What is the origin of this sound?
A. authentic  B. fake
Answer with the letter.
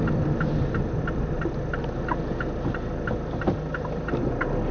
A